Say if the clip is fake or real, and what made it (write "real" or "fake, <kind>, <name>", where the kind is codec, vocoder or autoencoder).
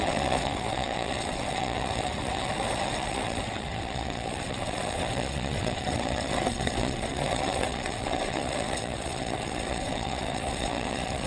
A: fake, vocoder, WaveNeXt